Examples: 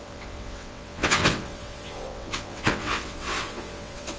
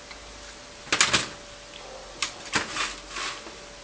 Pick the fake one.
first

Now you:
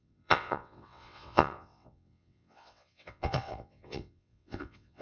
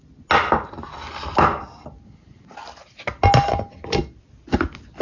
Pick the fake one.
first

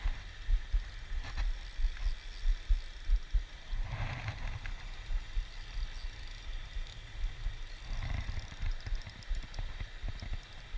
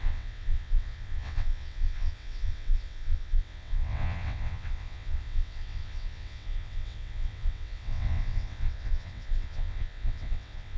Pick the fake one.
second